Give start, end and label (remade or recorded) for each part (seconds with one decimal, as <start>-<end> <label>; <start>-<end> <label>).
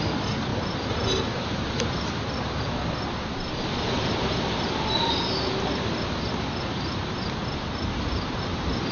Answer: 0.0-8.9 recorded